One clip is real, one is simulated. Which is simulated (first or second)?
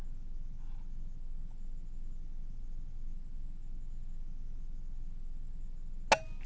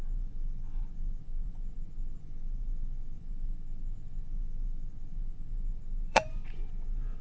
second